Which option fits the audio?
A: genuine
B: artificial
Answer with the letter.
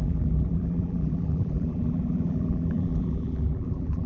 B